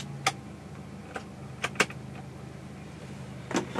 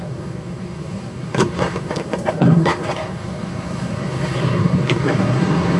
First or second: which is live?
first